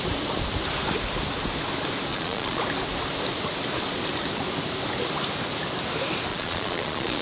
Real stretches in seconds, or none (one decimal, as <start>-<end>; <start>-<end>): 0.0-2.1; 2.6-6.3